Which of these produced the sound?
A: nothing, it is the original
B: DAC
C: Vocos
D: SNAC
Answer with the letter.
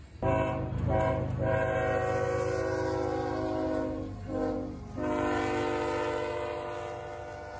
A